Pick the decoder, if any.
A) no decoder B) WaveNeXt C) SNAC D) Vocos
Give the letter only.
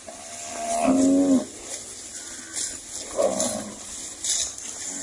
A